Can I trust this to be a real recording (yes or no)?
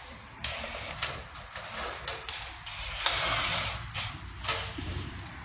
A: yes